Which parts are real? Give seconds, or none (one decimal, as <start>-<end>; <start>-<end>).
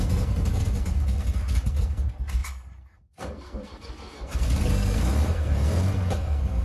none